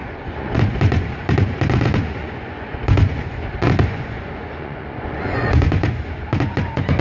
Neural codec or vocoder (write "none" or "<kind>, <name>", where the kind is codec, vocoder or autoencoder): vocoder, Vocos